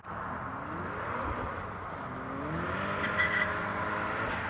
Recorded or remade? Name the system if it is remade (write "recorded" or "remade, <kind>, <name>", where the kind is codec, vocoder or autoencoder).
recorded